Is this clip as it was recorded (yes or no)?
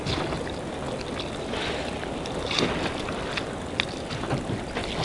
yes